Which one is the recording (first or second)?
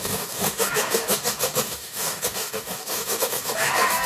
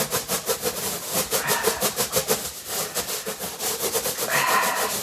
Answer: second